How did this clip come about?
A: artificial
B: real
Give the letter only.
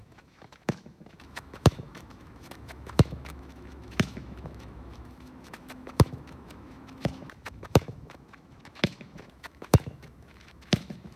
A